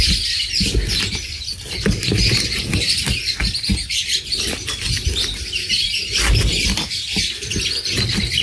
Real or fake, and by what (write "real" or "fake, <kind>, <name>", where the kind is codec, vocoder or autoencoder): real